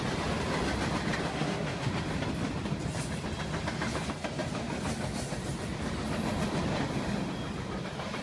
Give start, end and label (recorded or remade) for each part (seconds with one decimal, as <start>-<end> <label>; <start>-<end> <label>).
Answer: 0.0-1.3 recorded; 1.3-1.9 remade; 1.9-8.2 recorded